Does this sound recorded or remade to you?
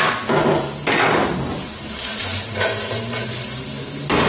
recorded